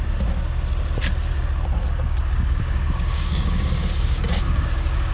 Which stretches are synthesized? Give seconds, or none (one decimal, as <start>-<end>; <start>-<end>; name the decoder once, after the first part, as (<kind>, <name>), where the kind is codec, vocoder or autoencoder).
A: 1.8-5.1 (codec, DAC)